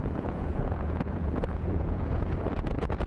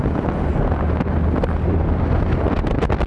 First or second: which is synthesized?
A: first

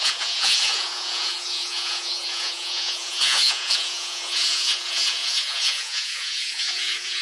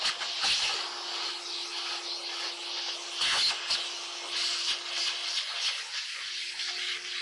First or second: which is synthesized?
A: first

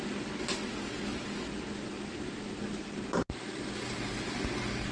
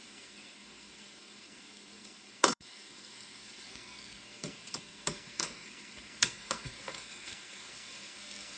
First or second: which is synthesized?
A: second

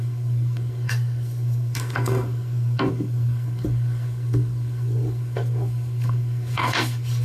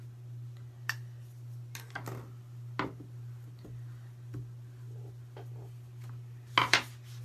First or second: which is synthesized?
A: first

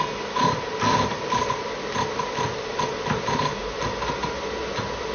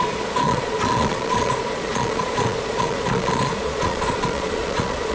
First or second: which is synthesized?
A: second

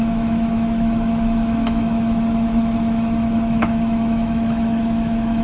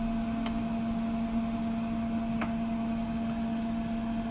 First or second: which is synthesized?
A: first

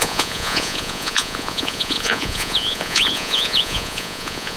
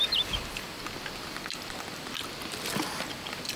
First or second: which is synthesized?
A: first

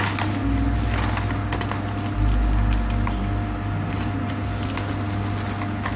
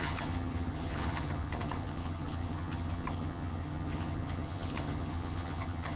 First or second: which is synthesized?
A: second